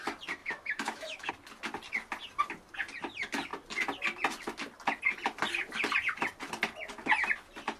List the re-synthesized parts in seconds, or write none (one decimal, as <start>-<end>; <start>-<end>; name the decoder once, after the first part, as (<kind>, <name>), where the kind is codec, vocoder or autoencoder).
0.4-1.3 (autoencoder, DAC-VAE)